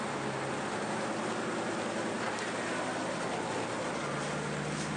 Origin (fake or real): real